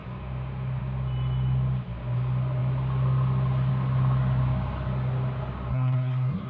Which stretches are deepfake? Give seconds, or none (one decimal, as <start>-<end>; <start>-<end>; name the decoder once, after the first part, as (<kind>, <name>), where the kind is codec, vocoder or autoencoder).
5.7-6.5 (codec, SNAC)